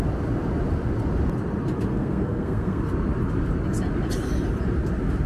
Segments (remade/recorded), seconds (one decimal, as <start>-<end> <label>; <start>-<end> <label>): 0.0-1.9 recorded; 1.9-2.8 remade; 2.8-5.3 recorded

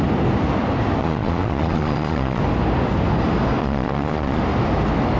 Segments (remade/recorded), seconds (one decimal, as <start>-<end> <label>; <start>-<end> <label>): 0.0-1.0 recorded; 1.0-2.4 remade; 2.4-3.6 recorded; 3.6-4.4 remade; 4.4-5.2 recorded

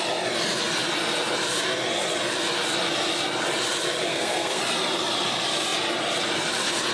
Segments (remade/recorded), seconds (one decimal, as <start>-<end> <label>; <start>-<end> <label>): 0.0-4.1 recorded; 4.1-4.6 remade; 4.6-6.9 recorded

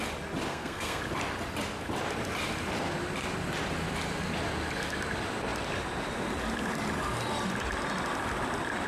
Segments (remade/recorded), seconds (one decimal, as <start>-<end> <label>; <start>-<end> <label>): 0.0-0.5 recorded; 0.5-1.0 remade; 1.0-8.9 recorded

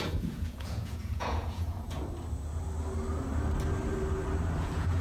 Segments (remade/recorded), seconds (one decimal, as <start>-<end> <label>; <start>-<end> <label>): 0.0-2.0 remade; 2.0-4.6 recorded; 4.6-5.0 remade

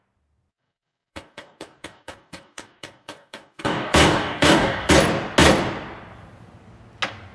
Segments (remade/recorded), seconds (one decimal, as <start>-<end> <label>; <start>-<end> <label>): 0.0-0.5 recorded; 0.5-4.9 remade; 4.9-7.3 recorded

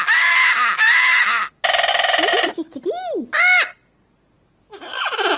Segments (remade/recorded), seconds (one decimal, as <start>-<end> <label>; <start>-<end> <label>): 0.0-1.4 remade; 1.4-4.6 recorded; 4.6-5.4 remade

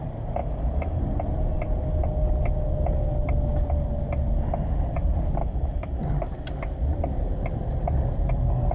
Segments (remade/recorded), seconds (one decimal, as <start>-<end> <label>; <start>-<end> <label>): 0.0-0.4 recorded; 0.4-1.0 remade; 1.0-5.4 recorded; 5.4-6.0 remade; 6.0-8.7 recorded